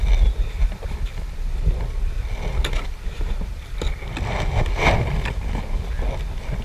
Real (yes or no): yes